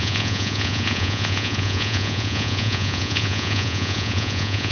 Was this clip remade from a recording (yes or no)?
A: yes